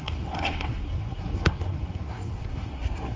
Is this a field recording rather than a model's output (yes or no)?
no